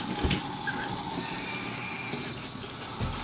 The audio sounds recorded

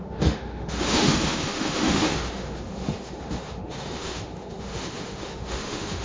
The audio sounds remade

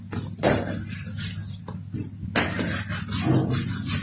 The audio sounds recorded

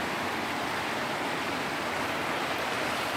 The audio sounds recorded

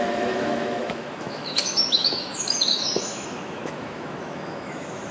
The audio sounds remade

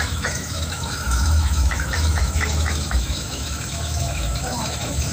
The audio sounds remade